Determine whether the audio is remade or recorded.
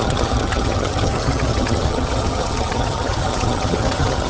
remade